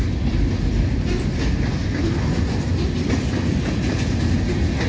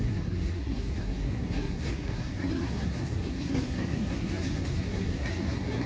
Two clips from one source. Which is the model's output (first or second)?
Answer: second